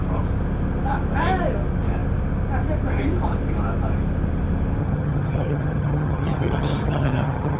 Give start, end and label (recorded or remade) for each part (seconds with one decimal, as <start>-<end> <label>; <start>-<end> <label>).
0.0-4.8 recorded; 4.8-7.6 remade

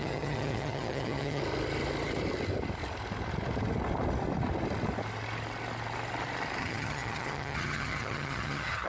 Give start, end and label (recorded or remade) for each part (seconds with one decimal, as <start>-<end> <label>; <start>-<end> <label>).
0.0-1.4 remade; 1.4-6.6 recorded; 6.6-8.9 remade